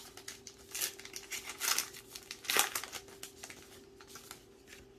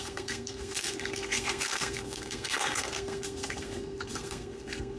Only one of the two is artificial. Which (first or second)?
second